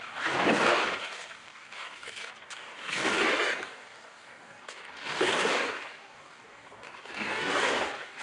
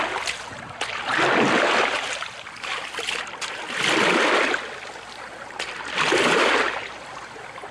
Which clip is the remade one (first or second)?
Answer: first